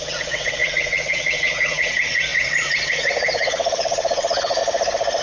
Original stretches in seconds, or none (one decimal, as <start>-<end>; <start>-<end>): 4.6-5.2